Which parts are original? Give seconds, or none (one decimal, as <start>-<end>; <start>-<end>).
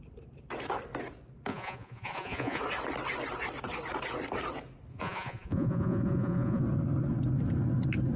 0.0-1.5; 2.6-4.9; 6.6-8.2